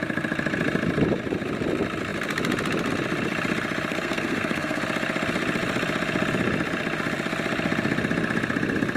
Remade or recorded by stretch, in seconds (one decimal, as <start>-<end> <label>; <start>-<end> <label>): 0.0-3.9 recorded; 3.9-4.8 remade; 4.8-9.0 recorded